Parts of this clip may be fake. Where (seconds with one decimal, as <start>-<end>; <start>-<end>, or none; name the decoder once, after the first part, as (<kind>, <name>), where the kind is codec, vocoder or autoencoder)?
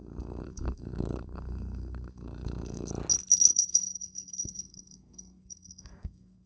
0.0-2.9 (codec, SNAC); 3.5-6.5